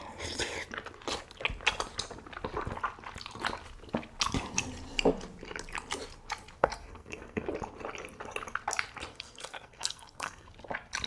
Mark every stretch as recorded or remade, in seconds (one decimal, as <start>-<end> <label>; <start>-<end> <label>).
0.0-6.6 recorded; 6.6-7.5 remade; 7.5-9.1 recorded; 9.1-10.5 remade; 10.5-11.1 recorded